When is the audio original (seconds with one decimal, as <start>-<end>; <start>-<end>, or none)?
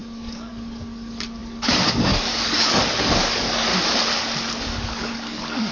3.7-4.6